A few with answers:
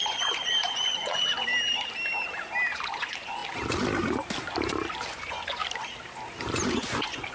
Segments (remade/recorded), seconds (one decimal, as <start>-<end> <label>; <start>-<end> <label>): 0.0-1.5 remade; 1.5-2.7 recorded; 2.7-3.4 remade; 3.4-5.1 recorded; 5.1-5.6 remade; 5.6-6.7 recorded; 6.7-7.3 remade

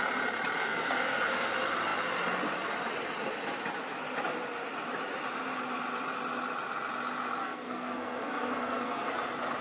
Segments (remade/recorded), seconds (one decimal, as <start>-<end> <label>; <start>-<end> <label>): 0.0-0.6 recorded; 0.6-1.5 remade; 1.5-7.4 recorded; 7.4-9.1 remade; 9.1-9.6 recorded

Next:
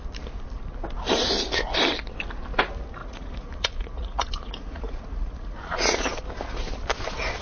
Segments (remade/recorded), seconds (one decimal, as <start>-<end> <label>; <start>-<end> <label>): 0.0-3.0 recorded; 3.0-6.1 remade; 6.1-7.4 recorded

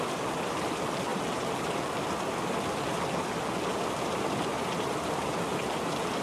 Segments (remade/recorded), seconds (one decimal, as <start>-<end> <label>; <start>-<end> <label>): 0.0-1.1 remade; 1.1-3.7 recorded; 3.7-6.2 remade